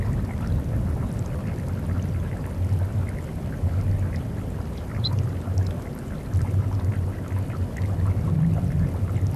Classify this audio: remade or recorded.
recorded